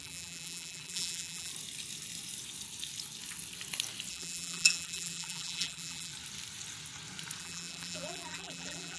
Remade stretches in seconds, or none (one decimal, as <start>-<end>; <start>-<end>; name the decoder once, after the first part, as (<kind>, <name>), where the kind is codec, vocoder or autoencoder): 0.0-1.5 (vocoder, BigVGAN v2); 4.1-6.1; 7.4-9.0